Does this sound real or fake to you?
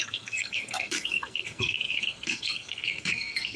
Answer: fake